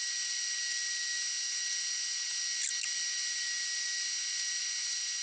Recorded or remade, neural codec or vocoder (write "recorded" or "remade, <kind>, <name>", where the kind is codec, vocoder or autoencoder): recorded